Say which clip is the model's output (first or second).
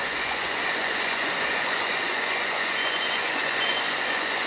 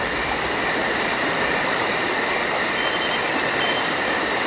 first